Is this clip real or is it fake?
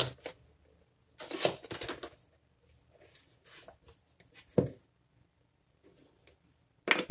real